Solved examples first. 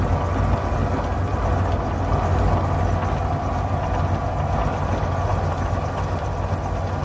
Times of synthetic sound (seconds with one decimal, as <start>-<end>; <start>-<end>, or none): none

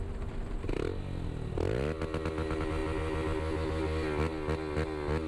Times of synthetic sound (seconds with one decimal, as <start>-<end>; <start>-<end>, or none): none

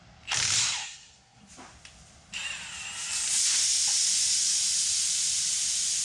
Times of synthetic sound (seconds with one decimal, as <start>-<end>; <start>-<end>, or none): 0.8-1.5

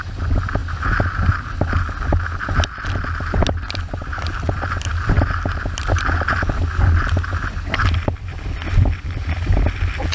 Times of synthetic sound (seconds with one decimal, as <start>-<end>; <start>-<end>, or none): none

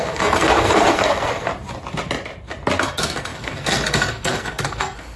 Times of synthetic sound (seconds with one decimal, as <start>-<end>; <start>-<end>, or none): 0.0-1.5; 2.8-5.2